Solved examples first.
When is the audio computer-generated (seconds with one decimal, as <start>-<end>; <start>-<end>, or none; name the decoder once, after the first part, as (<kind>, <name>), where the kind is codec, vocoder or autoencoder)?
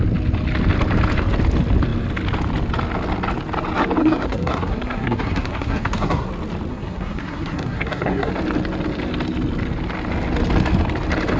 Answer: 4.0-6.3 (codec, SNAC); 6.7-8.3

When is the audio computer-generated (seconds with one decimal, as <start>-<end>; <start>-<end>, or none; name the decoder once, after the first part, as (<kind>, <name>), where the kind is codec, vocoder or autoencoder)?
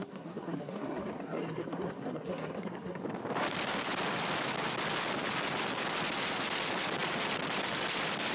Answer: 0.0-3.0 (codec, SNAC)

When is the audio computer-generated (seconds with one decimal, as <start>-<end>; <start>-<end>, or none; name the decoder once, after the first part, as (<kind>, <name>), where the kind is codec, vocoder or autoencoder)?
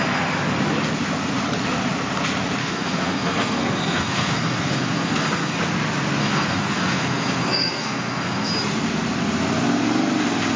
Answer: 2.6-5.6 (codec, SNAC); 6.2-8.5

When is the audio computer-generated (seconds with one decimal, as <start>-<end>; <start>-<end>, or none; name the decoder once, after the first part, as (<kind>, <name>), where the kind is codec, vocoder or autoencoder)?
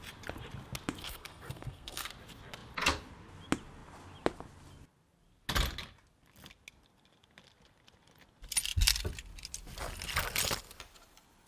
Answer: 1.0-2.1 (codec, SNAC)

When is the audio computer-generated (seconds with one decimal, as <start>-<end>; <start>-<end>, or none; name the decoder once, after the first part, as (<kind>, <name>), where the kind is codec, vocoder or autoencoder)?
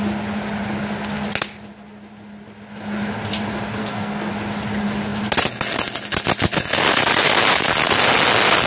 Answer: 3.8-4.3 (codec, SNAC)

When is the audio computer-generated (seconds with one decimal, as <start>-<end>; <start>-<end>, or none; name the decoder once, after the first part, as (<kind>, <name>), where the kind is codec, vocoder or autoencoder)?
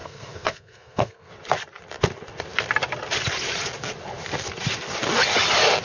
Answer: 0.0-1.3 (codec, SNAC)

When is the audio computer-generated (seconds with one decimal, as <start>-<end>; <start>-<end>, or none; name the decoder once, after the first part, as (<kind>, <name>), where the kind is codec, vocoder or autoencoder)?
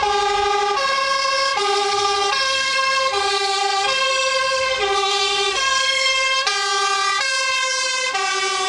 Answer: 1.6-6.5 (codec, SNAC)